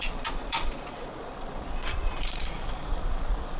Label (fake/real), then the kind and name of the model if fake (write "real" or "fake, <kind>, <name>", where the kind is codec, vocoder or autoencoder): fake, vocoder, Vocos